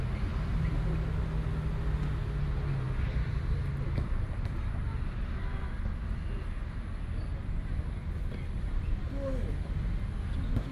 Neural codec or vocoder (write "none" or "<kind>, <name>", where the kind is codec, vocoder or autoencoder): none